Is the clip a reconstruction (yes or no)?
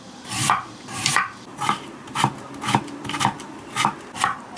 yes